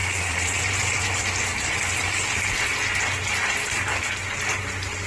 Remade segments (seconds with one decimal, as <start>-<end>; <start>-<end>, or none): 0.0-0.6